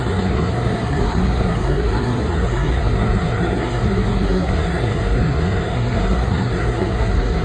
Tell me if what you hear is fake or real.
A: fake